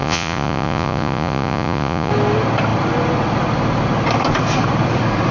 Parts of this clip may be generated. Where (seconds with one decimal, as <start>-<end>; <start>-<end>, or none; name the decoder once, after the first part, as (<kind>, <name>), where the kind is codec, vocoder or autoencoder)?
0.0-2.1 (vocoder, Vocos)